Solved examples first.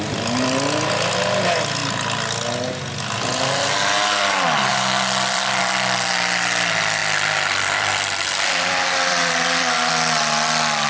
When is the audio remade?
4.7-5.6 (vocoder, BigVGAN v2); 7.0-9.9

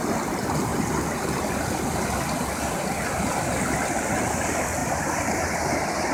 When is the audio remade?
none

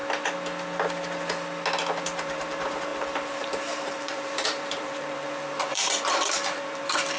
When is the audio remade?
2.0-7.2 (vocoder, BigVGAN v2)